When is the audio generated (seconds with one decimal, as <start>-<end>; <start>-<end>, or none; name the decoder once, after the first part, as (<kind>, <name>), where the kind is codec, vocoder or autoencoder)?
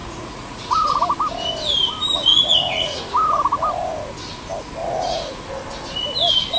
0.0-0.7 (vocoder, Vocos); 2.3-3.0; 4.8-5.5